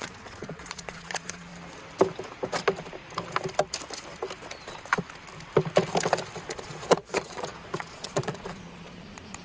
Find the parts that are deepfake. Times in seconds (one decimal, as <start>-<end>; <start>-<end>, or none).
0.0-1.5; 6.5-9.4

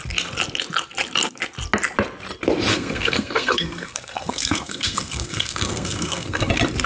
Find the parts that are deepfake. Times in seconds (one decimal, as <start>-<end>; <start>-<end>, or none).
2.7-6.5

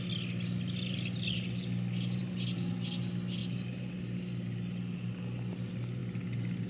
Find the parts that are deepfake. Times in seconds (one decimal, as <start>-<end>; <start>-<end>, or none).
none

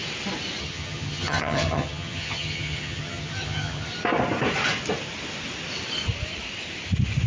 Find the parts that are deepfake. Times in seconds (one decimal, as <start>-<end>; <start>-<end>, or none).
0.6-3.9

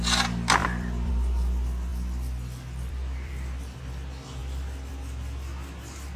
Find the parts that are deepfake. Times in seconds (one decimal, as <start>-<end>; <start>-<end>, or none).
0.6-1.1; 1.9-3.8; 4.4-4.9

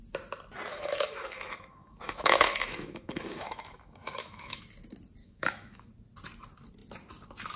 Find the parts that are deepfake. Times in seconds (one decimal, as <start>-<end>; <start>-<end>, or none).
0.7-4.6; 5.2-5.8